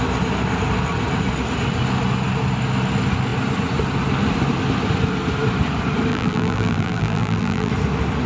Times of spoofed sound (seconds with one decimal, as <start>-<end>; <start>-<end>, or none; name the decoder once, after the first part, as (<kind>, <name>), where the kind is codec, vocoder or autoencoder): 6.1-7.7 (vocoder, BigVGAN v2)